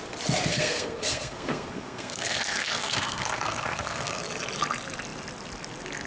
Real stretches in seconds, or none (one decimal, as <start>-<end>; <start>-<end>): 0.0-0.5; 4.2-6.1

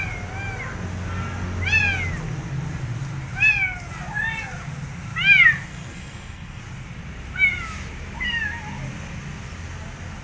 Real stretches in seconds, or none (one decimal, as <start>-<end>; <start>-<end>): 0.0-5.7; 6.6-10.2

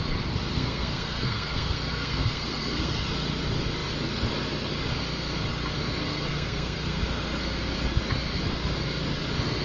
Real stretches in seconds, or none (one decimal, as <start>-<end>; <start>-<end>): 0.0-0.5; 2.9-6.0; 7.0-9.6

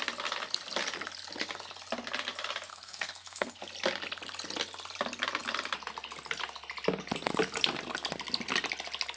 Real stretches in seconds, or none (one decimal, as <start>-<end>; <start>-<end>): 0.0-2.7; 3.6-9.2